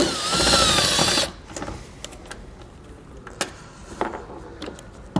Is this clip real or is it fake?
real